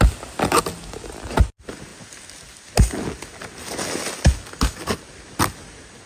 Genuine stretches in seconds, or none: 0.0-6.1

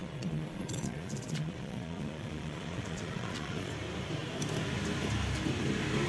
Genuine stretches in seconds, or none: 3.7-6.1

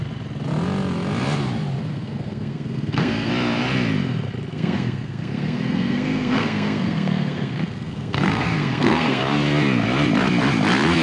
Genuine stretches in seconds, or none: 0.0-1.8; 3.3-4.5; 9.2-11.0

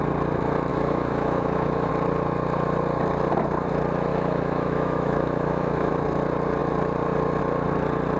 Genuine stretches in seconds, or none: 0.0-0.7; 1.9-4.1; 5.9-8.2

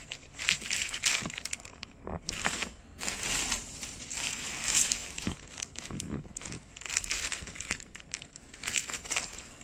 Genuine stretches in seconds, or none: 3.2-4.1

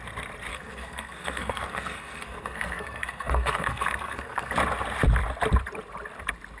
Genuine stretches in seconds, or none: 0.0-0.5; 4.5-6.6

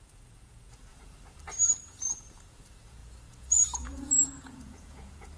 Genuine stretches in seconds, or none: 0.9-1.8

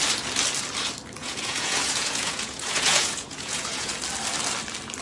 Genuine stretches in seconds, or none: 0.0-1.2; 3.9-5.0